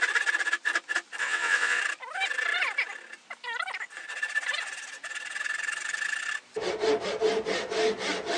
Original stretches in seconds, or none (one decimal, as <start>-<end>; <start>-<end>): 0.0-1.2; 1.8-8.4